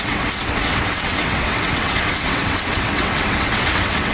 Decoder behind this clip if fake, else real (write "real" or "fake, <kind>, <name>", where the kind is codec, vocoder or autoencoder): fake, vocoder, WaveNeXt